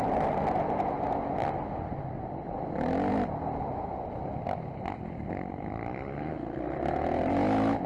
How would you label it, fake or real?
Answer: real